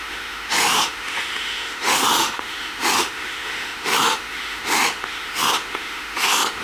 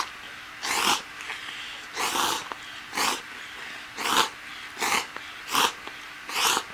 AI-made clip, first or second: first